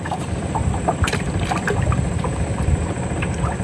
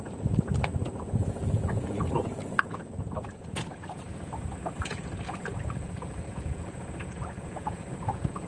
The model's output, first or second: second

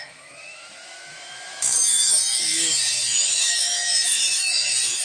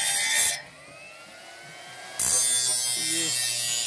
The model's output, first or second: first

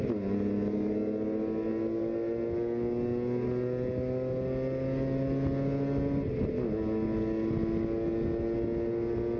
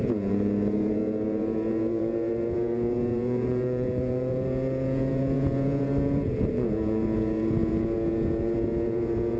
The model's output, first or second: second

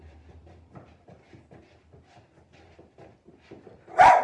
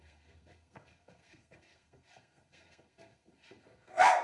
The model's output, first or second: second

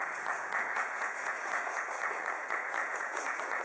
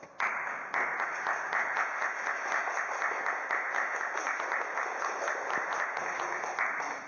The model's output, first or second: first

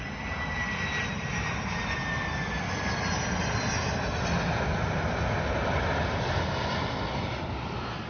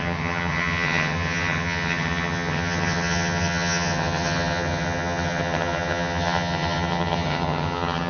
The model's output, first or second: second